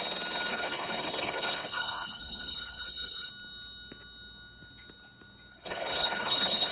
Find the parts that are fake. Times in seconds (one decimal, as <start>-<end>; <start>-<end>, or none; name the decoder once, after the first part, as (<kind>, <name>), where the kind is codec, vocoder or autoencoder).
0.5-3.3 (codec, HILCodec); 5.5-6.7